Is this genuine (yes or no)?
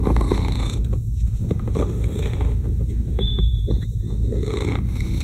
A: no